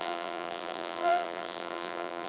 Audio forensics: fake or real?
fake